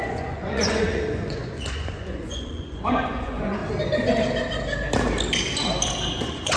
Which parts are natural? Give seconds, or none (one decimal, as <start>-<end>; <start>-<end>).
3.6-6.1